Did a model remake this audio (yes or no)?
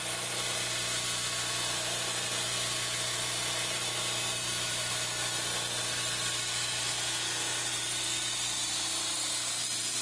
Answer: no